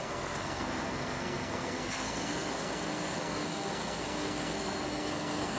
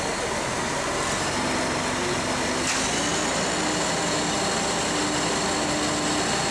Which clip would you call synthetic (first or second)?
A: first